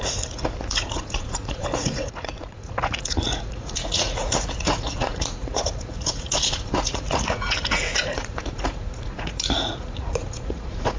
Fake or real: fake